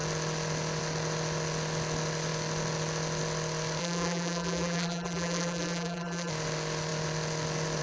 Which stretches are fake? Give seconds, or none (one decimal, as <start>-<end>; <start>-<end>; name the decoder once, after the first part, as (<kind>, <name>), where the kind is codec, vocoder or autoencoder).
3.8-6.3 (vocoder, BigVGAN v2)